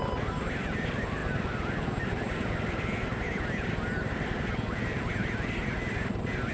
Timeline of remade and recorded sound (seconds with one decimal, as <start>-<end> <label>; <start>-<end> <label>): 0.0-6.5 recorded